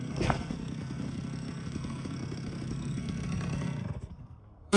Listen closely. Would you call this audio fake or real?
fake